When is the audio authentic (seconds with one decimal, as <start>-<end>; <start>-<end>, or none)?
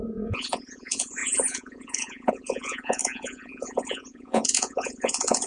none